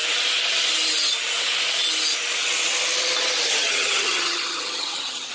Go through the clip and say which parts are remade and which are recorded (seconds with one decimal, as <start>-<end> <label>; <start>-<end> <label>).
0.0-3.6 recorded; 3.6-5.3 remade